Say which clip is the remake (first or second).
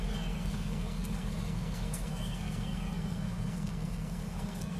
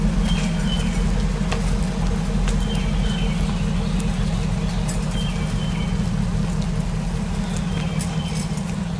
first